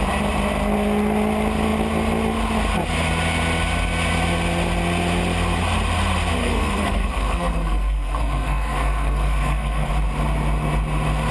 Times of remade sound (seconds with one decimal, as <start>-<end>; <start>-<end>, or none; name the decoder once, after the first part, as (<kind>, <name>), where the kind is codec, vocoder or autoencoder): 6.4-9.9 (codec, SNAC)